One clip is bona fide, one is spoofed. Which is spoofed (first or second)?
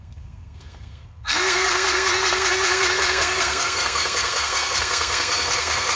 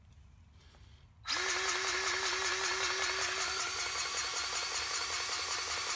first